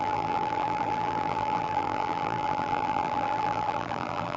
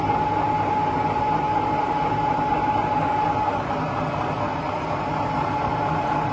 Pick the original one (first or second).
second